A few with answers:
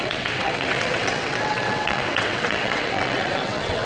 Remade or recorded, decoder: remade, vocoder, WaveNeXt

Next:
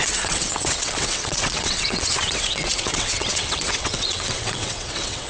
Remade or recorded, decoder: remade, vocoder, WaveNeXt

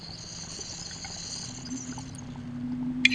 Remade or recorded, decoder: recorded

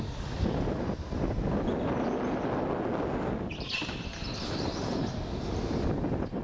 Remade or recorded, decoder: recorded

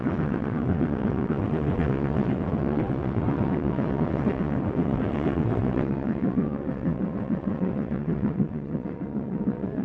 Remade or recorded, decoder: remade, vocoder, WaveNeXt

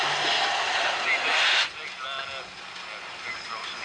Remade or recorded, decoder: recorded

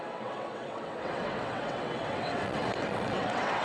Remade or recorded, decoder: remade, vocoder, WaveNeXt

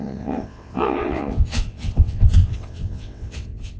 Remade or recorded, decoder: remade, vocoder, WaveNeXt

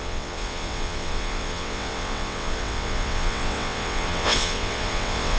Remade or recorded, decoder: remade, vocoder, WaveNeXt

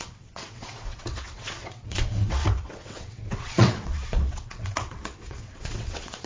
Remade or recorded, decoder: remade, vocoder, WaveNeXt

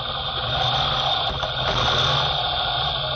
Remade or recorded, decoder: recorded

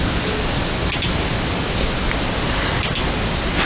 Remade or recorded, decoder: recorded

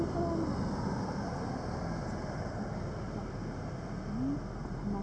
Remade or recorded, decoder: recorded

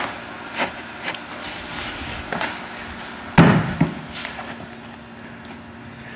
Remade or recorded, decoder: recorded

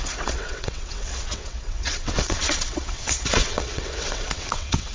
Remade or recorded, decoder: remade, vocoder, WaveNeXt